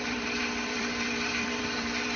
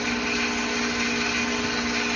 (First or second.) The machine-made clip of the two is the first